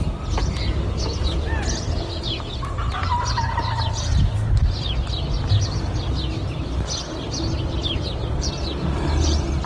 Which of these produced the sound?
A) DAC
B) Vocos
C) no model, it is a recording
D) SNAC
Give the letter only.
C